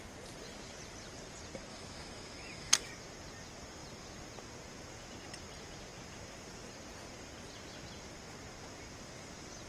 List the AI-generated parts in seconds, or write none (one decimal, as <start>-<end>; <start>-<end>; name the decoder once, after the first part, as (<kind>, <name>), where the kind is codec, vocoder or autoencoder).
1.7-2.9 (autoencoder, DAC-VAE)